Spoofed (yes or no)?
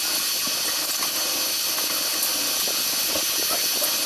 no